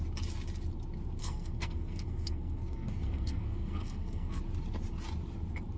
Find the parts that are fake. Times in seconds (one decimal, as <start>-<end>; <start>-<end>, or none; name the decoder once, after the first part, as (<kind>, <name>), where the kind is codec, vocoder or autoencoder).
1.2-4.4 (codec, SNAC)

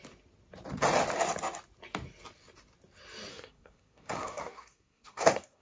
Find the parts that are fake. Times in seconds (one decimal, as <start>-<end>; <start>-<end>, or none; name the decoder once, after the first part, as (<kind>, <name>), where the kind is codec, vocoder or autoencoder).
3.3-5.6 (codec, SNAC)

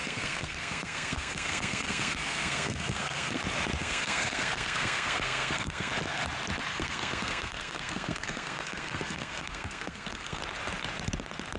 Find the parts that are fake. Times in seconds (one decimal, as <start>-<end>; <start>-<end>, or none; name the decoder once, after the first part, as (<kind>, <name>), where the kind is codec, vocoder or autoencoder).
0.0-3.4 (codec, SNAC); 3.8-5.9; 6.7-10.4

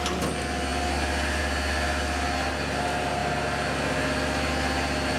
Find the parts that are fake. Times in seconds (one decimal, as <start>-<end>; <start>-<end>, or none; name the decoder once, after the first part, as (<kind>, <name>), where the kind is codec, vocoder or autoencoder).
none